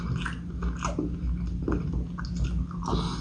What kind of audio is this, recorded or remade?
recorded